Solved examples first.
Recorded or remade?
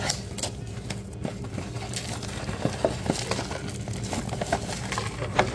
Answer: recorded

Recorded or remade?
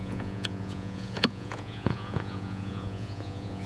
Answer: remade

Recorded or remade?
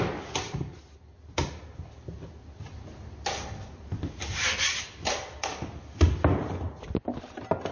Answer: recorded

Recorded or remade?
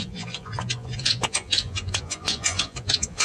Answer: remade